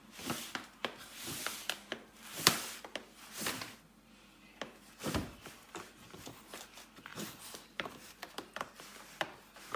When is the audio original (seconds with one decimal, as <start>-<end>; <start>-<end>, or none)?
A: 0.0-7.1; 8.1-9.8